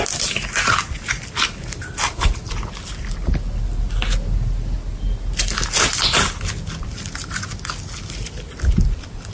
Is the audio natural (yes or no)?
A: yes